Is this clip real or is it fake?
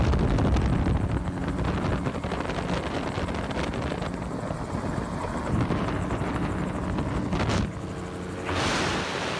real